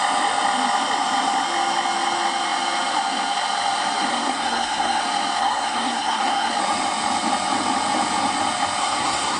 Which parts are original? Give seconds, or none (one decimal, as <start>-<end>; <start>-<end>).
0.0-4.1; 5.0-5.4; 6.5-8.8